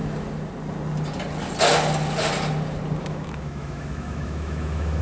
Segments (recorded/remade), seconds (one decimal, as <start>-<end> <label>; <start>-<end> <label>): 0.0-3.0 recorded; 3.0-5.0 remade